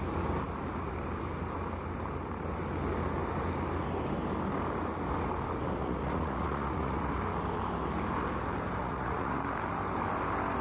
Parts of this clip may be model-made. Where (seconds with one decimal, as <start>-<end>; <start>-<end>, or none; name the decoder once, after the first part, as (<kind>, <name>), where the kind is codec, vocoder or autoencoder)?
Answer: 5.8-7.1 (vocoder, Vocos); 8.8-9.4